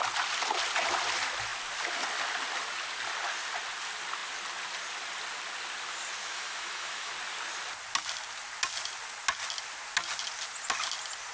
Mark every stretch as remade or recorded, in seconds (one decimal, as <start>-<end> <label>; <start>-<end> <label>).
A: 0.0-6.2 recorded; 6.2-7.1 remade; 7.1-11.3 recorded